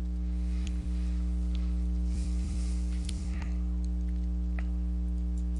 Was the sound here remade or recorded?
remade